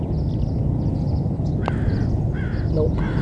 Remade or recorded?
recorded